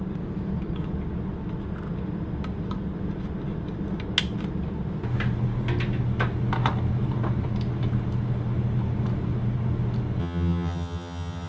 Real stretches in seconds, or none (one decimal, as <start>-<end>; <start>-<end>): 0.0-10.2